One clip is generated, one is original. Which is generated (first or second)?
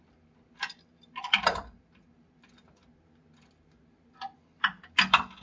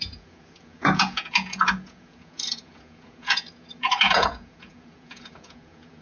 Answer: second